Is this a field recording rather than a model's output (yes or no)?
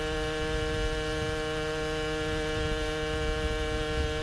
yes